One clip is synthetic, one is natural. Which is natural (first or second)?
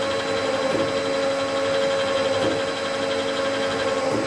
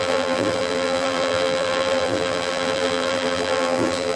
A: first